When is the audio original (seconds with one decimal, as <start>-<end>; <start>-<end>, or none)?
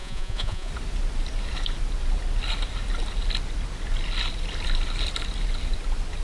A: 0.7-6.2